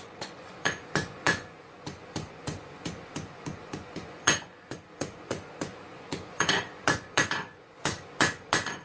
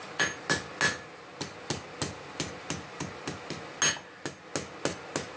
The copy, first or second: first